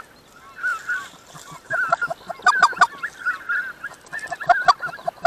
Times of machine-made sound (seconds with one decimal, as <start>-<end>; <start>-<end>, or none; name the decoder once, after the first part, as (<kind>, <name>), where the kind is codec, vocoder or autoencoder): 0.7-2.5 (vocoder, BigVGAN v2)